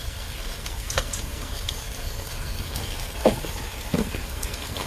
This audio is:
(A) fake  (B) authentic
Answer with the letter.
A